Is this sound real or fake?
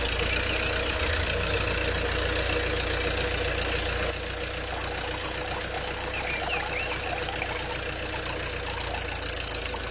real